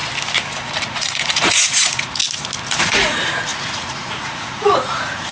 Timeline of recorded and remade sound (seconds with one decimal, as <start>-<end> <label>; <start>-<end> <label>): 0.0-0.9 recorded; 0.9-2.2 remade; 2.2-2.8 recorded; 2.8-5.3 remade